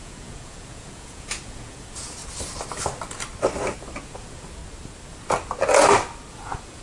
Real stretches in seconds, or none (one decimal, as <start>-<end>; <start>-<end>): 2.2-4.0; 4.6-6.3